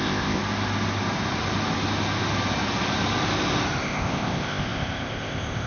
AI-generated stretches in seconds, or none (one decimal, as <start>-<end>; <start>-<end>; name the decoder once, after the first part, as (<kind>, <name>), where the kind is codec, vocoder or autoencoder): 0.0-0.4 (codec, ZipCodec); 3.8-5.7